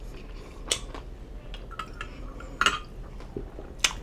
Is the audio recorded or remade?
recorded